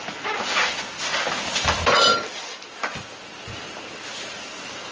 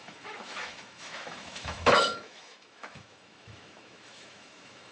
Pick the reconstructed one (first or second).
second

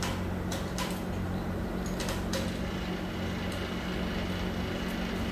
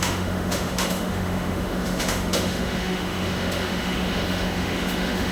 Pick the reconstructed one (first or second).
second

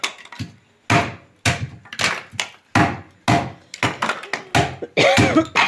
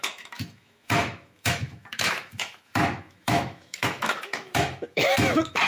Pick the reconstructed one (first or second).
second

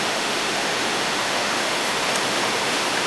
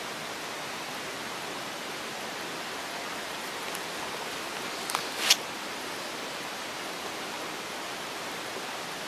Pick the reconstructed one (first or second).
first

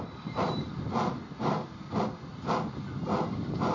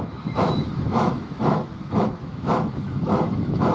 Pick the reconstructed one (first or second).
second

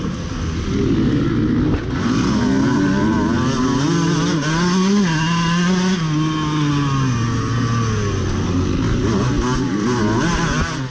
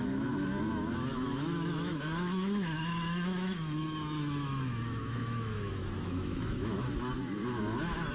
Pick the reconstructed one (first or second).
second